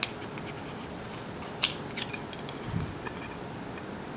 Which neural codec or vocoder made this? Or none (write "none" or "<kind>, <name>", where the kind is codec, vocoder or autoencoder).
none